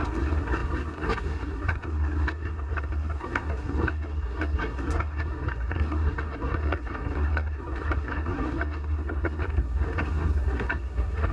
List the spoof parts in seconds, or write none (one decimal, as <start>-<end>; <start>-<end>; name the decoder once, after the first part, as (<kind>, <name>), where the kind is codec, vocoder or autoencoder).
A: 0.0-11.3 (codec, SNAC)